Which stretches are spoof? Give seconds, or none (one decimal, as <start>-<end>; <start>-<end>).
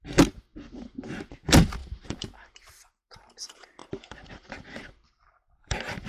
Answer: 0.0-6.1